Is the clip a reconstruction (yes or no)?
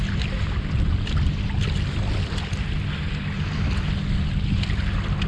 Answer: no